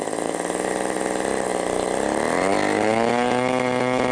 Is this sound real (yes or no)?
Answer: yes